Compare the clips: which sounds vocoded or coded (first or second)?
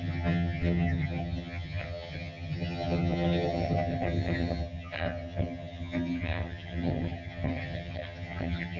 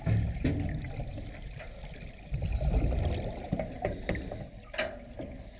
first